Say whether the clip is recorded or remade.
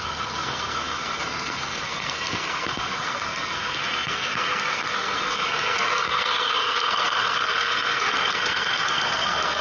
remade